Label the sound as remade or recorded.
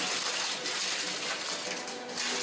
recorded